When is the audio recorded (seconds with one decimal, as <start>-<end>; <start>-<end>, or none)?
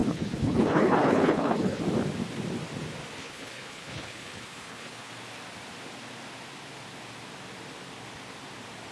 1.8-3.2; 5.1-8.9